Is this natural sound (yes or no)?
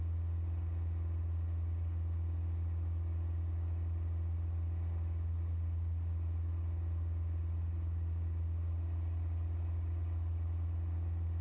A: yes